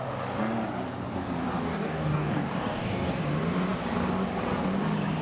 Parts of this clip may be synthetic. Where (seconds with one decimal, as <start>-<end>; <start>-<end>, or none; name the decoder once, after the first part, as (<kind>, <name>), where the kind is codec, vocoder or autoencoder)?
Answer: 1.4-3.1 (codec, DAC)